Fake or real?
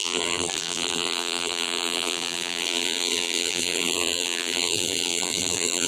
fake